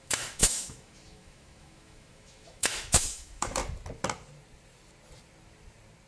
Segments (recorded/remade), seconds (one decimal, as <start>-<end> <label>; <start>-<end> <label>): 0.0-3.6 remade; 3.6-6.1 recorded